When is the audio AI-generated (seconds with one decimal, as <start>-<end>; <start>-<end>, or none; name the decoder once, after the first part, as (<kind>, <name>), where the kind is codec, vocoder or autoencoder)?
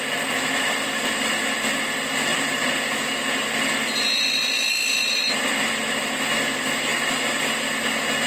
2.3-2.8 (vocoder, BigVGAN v2); 5.0-5.6